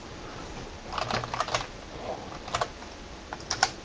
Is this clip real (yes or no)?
yes